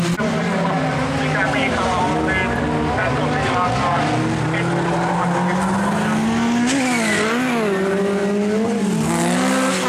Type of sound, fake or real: real